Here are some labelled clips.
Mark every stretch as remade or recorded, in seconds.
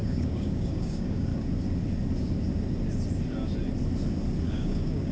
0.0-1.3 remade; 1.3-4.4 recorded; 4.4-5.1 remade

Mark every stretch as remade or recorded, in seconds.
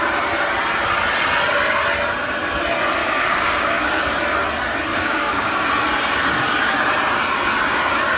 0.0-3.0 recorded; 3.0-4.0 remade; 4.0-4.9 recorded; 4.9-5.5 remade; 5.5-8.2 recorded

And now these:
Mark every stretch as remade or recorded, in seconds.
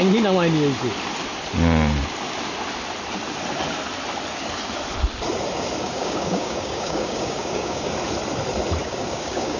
0.0-5.8 recorded; 5.8-7.9 remade; 7.9-8.8 recorded; 8.8-9.6 remade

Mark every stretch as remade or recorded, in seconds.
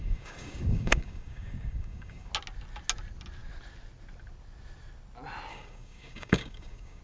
0.0-2.3 remade; 2.3-5.5 recorded; 5.5-7.0 remade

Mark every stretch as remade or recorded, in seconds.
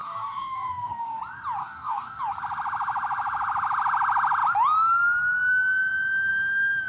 0.0-1.2 remade; 1.2-1.6 recorded; 1.6-2.2 remade; 2.2-6.9 recorded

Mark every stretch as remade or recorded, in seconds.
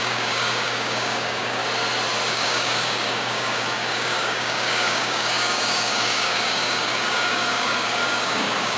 0.0-1.6 remade; 1.6-2.3 recorded; 2.3-8.8 remade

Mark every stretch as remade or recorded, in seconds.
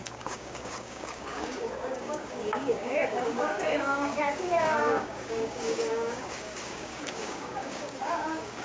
0.0-8.6 remade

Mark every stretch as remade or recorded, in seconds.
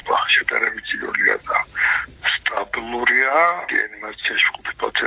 0.0-3.1 recorded; 3.1-4.2 remade; 4.2-5.1 recorded